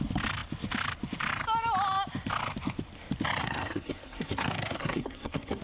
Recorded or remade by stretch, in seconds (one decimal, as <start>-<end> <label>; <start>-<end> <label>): 0.0-3.4 recorded; 3.4-5.6 remade